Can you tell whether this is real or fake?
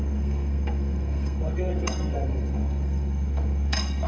fake